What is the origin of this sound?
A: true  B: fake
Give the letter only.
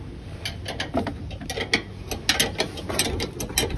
A